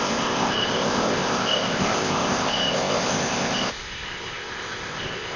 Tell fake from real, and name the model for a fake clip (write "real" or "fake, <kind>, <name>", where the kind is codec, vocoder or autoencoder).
fake, codec, ZipCodec